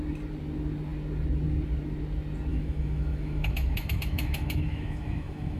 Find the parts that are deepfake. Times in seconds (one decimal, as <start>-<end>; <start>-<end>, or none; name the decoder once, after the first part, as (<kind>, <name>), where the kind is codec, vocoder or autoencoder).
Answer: 2.5-5.6 (autoencoder, DAC-VAE)

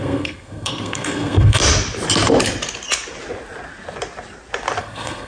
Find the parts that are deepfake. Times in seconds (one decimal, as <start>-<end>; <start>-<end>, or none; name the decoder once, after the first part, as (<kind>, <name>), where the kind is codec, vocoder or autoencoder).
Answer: 0.0-1.6 (codec, SNAC); 4.8-5.3

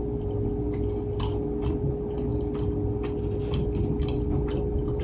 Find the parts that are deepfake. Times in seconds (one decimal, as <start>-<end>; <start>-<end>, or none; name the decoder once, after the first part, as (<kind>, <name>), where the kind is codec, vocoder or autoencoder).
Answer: none

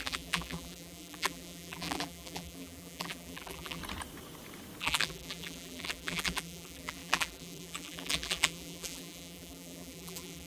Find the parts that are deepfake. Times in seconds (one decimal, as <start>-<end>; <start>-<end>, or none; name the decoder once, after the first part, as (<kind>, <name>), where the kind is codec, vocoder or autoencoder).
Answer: 0.0-3.8 (vocoder, BigVGAN v2); 4.8-10.5